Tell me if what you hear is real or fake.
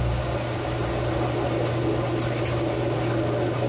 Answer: fake